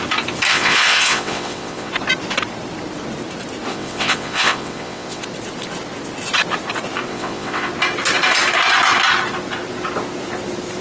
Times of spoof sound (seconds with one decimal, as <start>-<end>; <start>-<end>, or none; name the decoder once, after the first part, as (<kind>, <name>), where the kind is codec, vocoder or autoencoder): 0.5-1.9 (vocoder, WaveNeXt); 3.7-5.2; 7.1-7.7